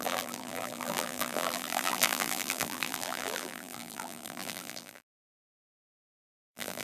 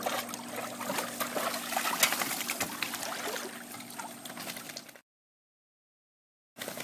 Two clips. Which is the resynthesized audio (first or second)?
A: first